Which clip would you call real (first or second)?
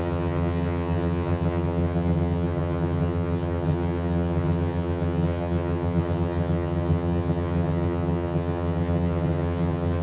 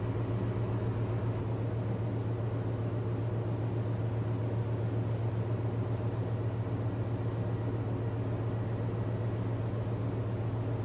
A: second